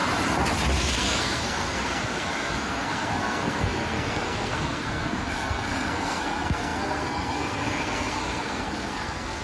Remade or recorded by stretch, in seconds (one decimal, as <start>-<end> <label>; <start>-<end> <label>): 0.0-0.8 recorded; 0.8-9.4 remade